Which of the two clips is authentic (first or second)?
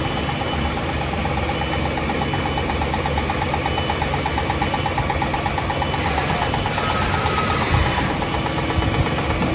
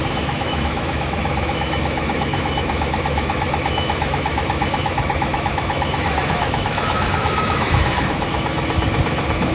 first